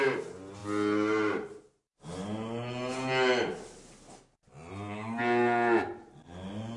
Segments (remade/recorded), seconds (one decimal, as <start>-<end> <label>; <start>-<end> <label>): 0.0-6.8 recorded

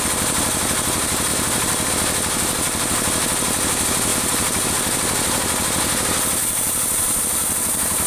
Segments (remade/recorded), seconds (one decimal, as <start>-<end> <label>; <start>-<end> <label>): 0.0-1.3 recorded; 1.3-1.9 remade; 1.9-4.1 recorded; 4.1-4.7 remade; 4.7-6.4 recorded; 6.4-8.1 remade

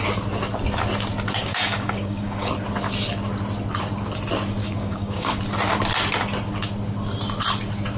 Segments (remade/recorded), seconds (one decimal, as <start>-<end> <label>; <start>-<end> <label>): 0.0-1.4 recorded; 1.4-2.5 remade; 2.5-4.6 recorded; 4.6-5.4 remade; 5.4-8.0 recorded

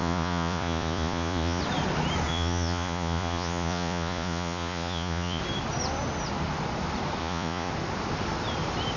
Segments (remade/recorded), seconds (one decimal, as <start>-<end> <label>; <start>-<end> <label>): 0.0-1.6 remade; 1.6-2.3 recorded; 2.3-5.4 remade; 5.4-7.2 recorded; 7.2-7.7 remade; 7.7-9.0 recorded

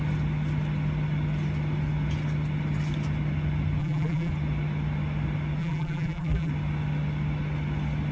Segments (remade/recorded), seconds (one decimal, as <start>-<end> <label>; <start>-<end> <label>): 0.0-3.8 recorded; 3.8-4.3 remade; 4.3-5.6 recorded; 5.6-6.5 remade; 6.5-8.1 recorded

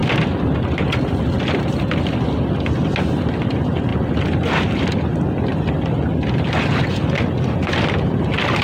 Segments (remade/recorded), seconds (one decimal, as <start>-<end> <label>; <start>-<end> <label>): 0.0-8.6 recorded

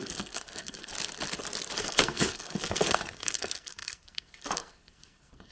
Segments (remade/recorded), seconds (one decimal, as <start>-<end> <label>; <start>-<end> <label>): 0.0-0.9 remade; 0.9-1.8 recorded; 1.8-5.5 remade

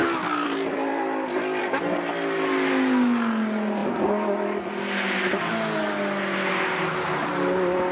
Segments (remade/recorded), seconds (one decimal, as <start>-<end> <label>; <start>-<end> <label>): 0.0-1.6 remade; 1.6-7.9 recorded